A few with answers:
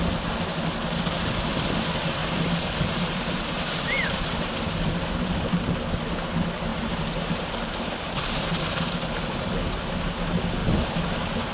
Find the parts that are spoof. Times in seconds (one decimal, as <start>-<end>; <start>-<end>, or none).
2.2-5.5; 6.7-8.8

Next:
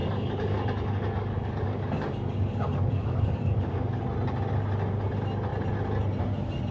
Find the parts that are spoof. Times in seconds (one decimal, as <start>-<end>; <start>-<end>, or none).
0.0-4.0

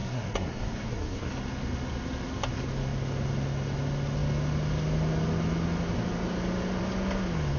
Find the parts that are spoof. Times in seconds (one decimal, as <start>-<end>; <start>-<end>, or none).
0.0-1.3

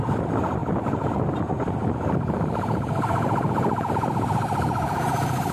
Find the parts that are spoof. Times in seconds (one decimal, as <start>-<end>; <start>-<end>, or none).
none

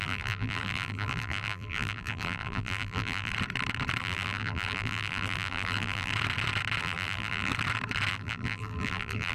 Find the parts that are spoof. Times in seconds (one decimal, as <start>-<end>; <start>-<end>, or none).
0.0-3.3; 4.0-6.1; 6.8-7.5; 8.1-9.3

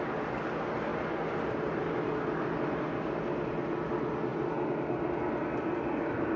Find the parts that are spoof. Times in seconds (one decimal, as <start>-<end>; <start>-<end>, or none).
none

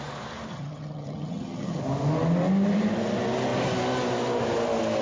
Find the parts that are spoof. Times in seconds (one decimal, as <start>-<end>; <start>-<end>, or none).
0.5-1.8

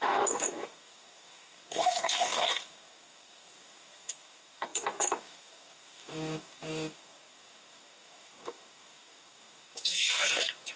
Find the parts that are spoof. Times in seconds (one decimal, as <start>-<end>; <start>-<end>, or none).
0.0-10.8